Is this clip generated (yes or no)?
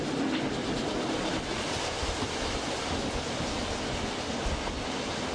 no